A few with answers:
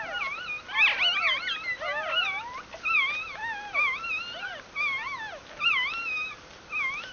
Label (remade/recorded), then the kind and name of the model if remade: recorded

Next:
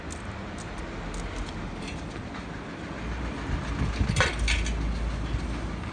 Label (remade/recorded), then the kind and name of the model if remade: recorded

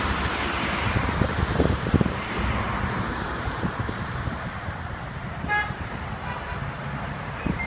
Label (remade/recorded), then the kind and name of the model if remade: remade, vocoder, BigVGAN v2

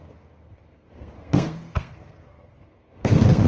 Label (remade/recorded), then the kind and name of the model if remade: remade, codec, SNAC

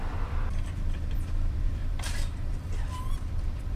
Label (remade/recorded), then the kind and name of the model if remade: remade, vocoder, BigVGAN v2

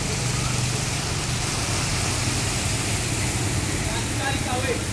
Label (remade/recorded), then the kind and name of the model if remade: recorded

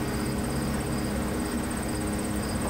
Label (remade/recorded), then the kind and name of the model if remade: recorded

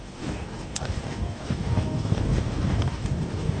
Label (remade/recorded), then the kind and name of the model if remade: remade, codec, DAC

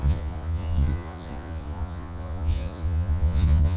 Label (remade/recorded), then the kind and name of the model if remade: remade, vocoder, Vocos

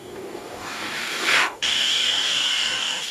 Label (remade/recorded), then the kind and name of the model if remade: remade, codec, DAC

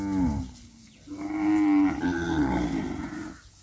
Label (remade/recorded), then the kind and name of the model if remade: recorded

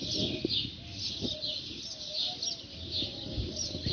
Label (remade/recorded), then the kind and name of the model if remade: recorded